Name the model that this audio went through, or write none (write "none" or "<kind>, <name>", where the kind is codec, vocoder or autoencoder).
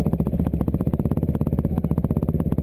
vocoder, BigVGAN v2